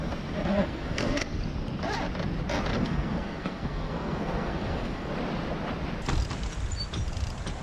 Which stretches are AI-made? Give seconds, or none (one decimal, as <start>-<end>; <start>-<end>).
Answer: 0.5-1.4; 2.7-5.1